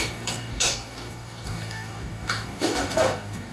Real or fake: fake